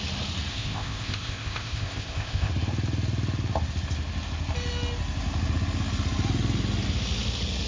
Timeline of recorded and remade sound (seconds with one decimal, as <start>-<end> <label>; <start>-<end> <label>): 0.0-0.5 recorded; 0.5-2.5 remade; 2.5-7.7 recorded